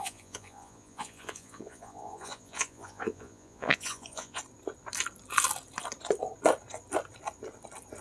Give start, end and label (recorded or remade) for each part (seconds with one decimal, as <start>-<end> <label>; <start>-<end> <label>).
0.0-4.4 remade; 4.4-8.0 recorded